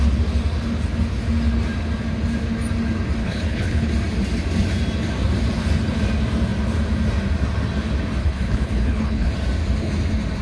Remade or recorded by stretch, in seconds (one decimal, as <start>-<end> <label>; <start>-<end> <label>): 0.0-3.2 recorded; 3.2-3.9 remade; 3.9-8.2 recorded; 8.2-9.3 remade; 9.3-10.4 recorded